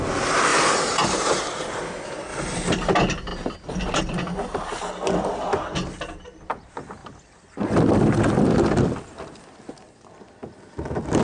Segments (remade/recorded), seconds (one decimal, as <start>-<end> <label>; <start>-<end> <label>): 0.0-0.5 recorded; 0.5-1.8 remade; 1.8-2.3 recorded; 2.3-2.9 remade; 2.9-11.2 recorded